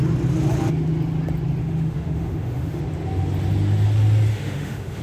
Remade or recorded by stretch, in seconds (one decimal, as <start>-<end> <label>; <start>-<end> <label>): 0.0-1.6 recorded; 1.6-2.8 remade; 2.8-4.3 recorded; 4.3-5.0 remade